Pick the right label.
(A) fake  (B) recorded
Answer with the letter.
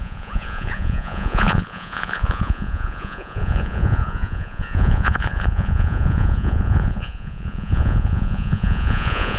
A